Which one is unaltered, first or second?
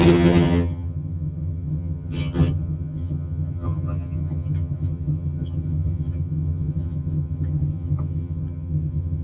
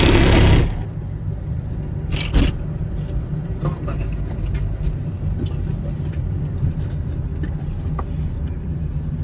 second